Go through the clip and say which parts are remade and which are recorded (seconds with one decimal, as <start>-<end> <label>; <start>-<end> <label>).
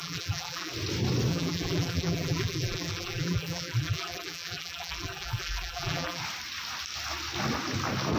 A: 0.0-0.7 remade; 0.7-1.3 recorded; 1.3-6.2 remade; 6.2-8.2 recorded